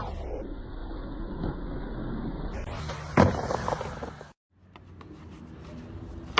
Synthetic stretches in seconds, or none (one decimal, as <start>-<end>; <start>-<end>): none